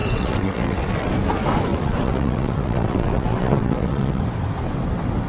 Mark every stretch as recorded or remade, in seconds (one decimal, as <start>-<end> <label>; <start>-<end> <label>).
0.0-1.1 remade; 1.1-1.7 recorded; 1.7-4.2 remade; 4.2-5.3 recorded